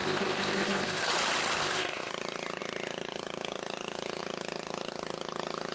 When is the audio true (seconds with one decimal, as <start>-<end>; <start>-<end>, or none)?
1.0-1.6; 2.1-5.7